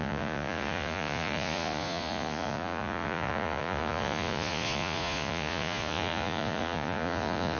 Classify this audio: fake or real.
fake